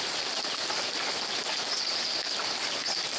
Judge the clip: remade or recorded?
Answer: recorded